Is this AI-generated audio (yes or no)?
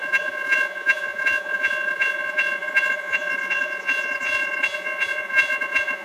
yes